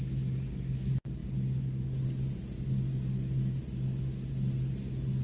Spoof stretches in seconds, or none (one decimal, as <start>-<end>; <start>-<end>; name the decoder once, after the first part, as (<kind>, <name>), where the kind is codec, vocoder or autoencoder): none